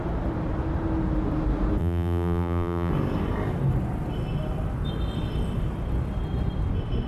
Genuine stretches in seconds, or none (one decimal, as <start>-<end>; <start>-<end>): 0.0-1.8; 2.9-7.1